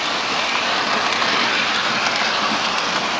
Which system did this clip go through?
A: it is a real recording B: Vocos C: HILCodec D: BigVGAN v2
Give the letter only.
A